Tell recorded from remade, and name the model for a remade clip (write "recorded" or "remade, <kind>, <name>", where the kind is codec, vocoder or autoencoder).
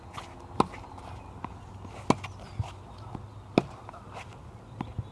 recorded